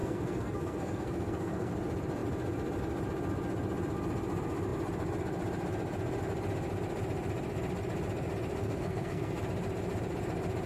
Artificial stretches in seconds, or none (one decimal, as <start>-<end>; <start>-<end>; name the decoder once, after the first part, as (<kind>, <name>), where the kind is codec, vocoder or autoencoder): 0.0-1.7 (codec, SNAC); 8.6-9.4